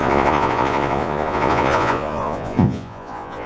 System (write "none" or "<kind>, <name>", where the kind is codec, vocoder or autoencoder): vocoder, Vocos